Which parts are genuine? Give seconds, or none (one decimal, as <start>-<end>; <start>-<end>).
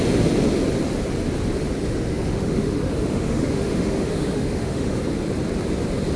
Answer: 0.0-1.8; 5.0-6.2